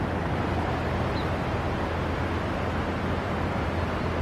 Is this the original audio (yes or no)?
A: yes